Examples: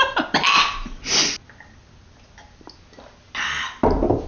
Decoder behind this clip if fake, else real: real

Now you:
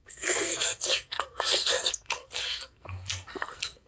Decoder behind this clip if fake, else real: fake, codec, SNAC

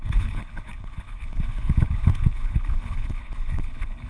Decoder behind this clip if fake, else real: fake, codec, HILCodec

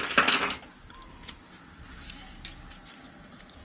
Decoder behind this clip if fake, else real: real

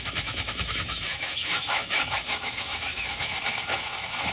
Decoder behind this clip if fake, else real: fake, autoencoder, DAC-VAE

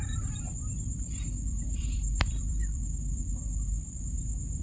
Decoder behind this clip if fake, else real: fake, vocoder, BigVGAN v2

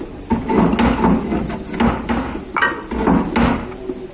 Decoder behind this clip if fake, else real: real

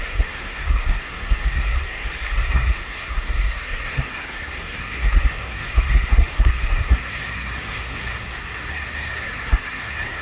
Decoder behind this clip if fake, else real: fake, codec, SNAC